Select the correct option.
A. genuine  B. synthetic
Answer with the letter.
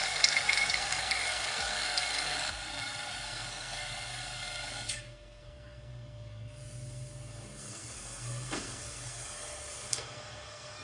B